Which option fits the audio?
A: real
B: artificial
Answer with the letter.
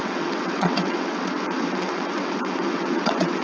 B